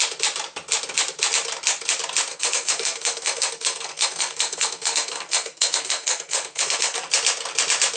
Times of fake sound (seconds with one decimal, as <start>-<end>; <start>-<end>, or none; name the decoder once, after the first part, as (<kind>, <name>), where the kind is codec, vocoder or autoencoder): 2.3-7.1 (codec, SNAC)